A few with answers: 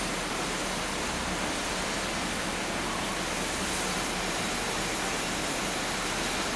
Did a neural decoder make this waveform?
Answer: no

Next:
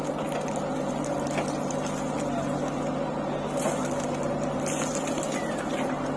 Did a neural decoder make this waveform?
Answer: no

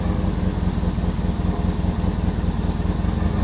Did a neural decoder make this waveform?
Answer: no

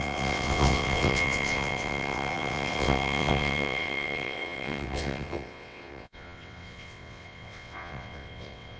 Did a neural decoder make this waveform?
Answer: yes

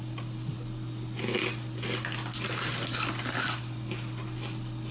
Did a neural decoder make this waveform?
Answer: no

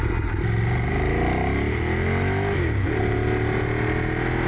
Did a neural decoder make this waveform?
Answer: no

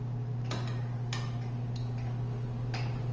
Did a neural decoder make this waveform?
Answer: no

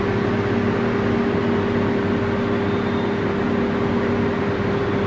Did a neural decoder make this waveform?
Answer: no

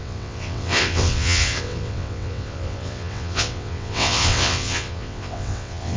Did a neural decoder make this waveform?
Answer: yes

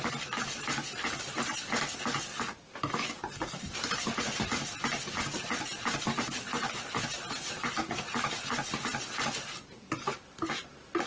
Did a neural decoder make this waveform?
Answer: no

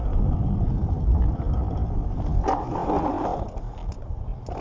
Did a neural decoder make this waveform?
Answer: no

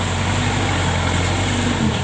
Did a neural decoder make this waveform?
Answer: no